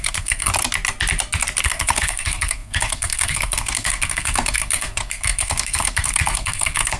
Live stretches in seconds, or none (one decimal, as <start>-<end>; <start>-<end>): 0.5-1.6